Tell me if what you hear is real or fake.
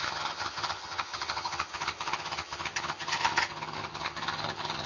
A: fake